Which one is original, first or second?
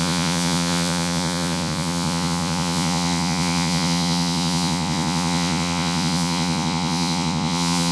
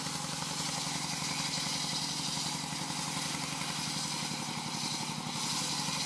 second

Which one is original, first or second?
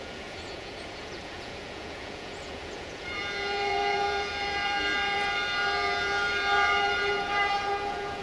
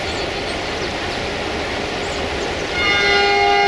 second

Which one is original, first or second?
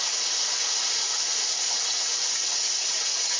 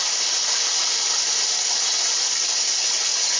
second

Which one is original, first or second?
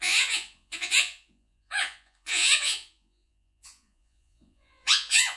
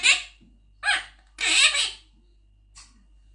second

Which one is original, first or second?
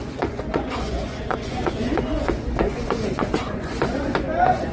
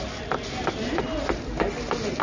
second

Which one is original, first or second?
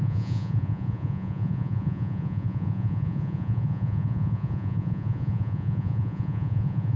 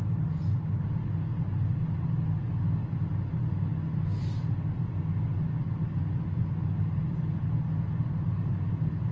second